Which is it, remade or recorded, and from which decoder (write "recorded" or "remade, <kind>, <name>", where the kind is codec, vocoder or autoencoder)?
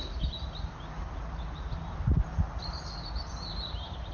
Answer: recorded